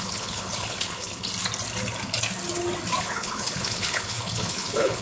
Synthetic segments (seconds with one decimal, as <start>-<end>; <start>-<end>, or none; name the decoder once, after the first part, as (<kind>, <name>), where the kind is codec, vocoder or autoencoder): 0.0-1.3 (codec, HILCodec); 3.0-5.0

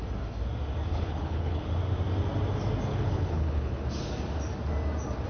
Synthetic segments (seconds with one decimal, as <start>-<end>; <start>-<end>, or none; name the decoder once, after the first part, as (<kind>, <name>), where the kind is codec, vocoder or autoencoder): 0.9-1.6 (codec, HILCodec); 2.9-3.8

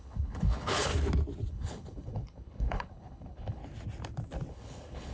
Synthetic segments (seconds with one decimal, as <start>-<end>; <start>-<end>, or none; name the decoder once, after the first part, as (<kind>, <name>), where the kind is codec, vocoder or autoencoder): 0.0-0.9 (codec, HILCodec); 1.5-3.6; 4.5-5.1